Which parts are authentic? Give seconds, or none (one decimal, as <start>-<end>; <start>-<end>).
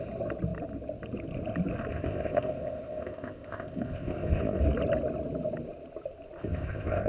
0.0-1.9; 4.6-6.4